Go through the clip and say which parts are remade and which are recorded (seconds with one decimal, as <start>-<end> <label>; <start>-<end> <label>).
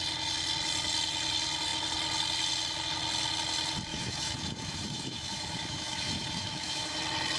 0.0-3.9 recorded; 3.9-7.0 remade; 7.0-7.4 recorded